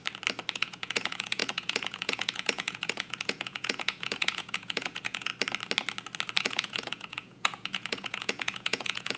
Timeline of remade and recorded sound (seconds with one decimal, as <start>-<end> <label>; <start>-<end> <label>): 0.0-0.5 recorded; 0.5-5.3 remade; 5.3-6.4 recorded; 6.4-9.2 remade